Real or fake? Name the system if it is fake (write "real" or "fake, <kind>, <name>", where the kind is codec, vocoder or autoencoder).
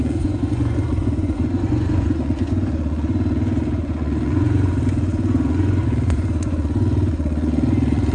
fake, vocoder, Vocos